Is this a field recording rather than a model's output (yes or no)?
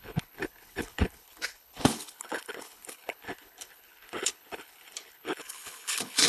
no